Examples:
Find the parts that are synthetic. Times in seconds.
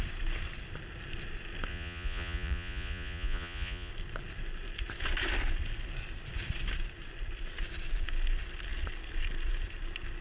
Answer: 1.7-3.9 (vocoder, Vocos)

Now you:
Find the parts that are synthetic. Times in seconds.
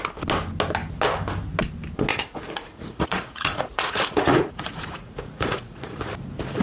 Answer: 2.1-6.1 (vocoder, Vocos)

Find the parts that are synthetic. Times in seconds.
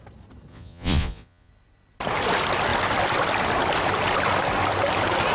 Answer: 0.5-1.5 (vocoder, Vocos)